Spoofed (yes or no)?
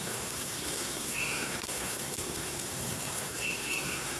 yes